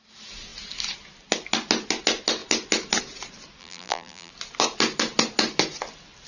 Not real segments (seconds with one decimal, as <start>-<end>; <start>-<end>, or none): 3.6-4.3